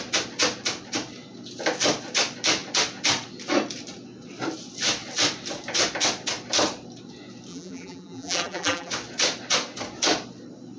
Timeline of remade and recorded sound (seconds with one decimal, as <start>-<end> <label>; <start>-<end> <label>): 0.0-7.5 recorded; 7.5-8.9 remade; 8.9-10.8 recorded